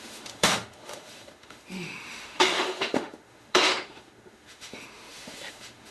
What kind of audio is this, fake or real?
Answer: fake